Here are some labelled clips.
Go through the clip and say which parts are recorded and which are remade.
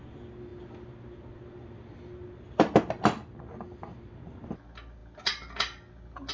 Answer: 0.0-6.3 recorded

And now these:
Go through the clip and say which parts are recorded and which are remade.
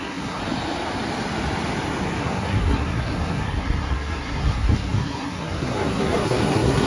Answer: 0.0-0.4 remade; 0.4-2.2 recorded; 2.2-6.9 remade